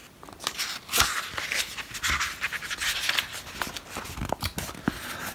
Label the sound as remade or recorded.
recorded